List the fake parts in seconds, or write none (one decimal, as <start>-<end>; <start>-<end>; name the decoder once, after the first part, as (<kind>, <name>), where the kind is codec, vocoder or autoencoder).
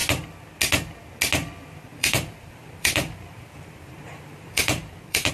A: 1.9-5.3 (vocoder, BigVGAN v2)